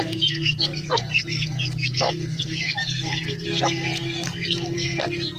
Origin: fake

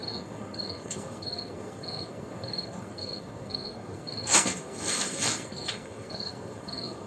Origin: fake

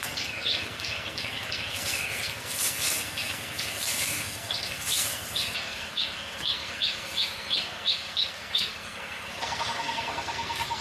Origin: fake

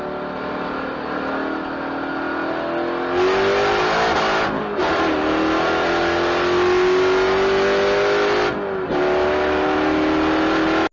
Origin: real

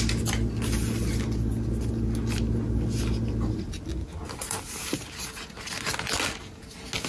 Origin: real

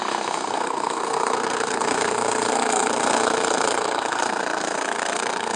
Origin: fake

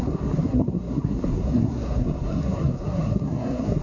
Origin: fake